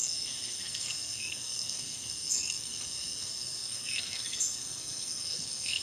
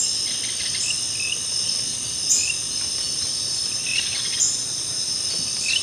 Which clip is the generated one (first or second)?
first